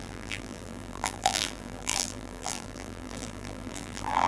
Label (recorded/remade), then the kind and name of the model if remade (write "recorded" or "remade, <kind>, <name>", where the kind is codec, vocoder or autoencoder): remade, vocoder, BigVGAN v2